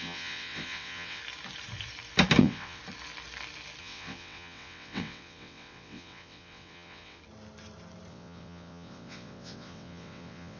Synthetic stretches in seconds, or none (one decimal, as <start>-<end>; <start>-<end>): 0.0-1.2; 2.4-2.8; 3.8-7.2; 8.1-10.6